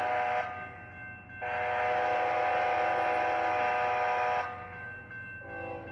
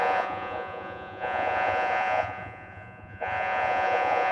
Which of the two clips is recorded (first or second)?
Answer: first